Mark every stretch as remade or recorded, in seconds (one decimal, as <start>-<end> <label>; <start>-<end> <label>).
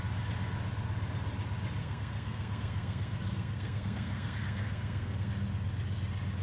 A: 0.0-1.8 recorded; 1.8-5.3 remade; 5.3-6.4 recorded